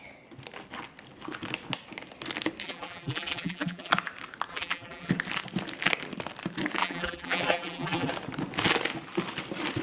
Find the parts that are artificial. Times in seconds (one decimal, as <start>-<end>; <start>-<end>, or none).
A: 2.6-3.9; 4.5-5.1; 6.8-8.1